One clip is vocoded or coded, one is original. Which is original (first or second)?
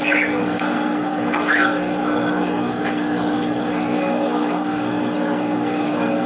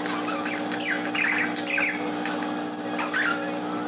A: second